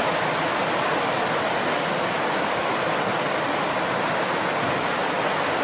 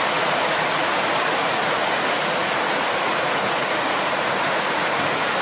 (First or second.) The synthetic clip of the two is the second